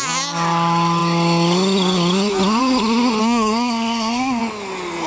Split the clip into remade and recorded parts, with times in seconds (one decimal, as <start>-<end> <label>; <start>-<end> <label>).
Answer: 0.0-3.2 recorded; 3.2-4.4 remade; 4.4-5.1 recorded

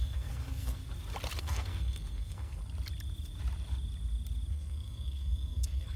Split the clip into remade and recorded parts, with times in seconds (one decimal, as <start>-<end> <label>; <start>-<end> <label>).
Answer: 0.0-0.8 remade; 0.8-1.4 recorded; 1.4-2.6 remade; 2.6-4.5 recorded; 4.5-6.0 remade

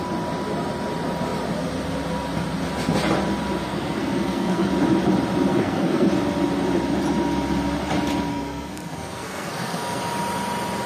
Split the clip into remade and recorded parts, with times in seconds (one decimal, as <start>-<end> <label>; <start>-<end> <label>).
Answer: 0.0-3.6 recorded; 3.6-4.7 remade; 4.7-5.5 recorded; 5.5-6.1 remade; 6.1-8.3 recorded; 8.3-10.0 remade; 10.0-10.9 recorded

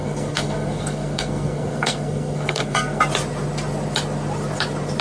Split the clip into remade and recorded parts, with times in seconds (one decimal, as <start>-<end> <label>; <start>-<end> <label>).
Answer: 0.0-3.0 remade; 3.0-5.0 recorded

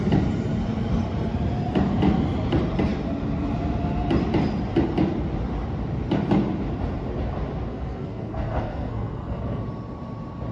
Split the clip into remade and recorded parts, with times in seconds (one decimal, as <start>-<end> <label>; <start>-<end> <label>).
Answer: 0.0-7.7 recorded; 7.7-9.6 remade; 9.6-10.5 recorded

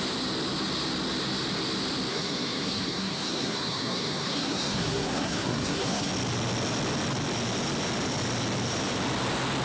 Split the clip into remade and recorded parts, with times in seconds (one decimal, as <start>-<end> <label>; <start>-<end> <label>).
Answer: 0.0-2.1 recorded; 2.1-6.1 remade; 6.1-9.6 recorded

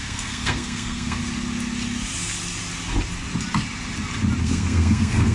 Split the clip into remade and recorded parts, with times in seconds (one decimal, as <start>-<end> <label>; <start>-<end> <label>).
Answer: 0.0-1.2 remade; 1.2-4.4 recorded; 4.4-5.3 remade